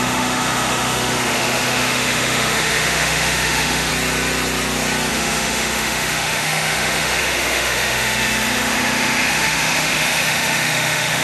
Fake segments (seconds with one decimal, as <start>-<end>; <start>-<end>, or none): 0.0-3.9; 5.1-11.2